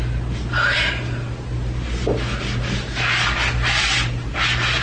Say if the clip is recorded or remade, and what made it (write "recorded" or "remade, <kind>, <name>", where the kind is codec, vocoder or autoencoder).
recorded